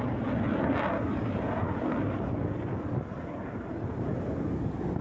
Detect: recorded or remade recorded